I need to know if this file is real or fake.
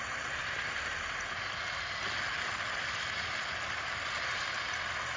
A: real